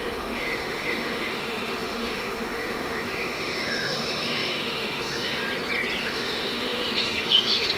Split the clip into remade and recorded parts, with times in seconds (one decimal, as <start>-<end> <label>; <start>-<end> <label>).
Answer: 0.0-5.4 remade; 5.4-6.0 recorded; 6.0-7.8 remade